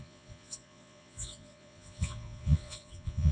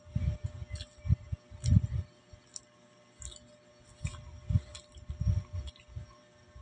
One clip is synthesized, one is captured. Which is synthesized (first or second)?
first